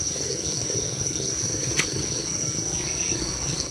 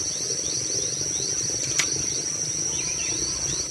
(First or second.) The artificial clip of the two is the first